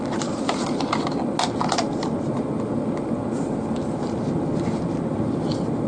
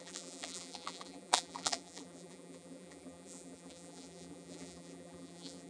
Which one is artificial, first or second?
second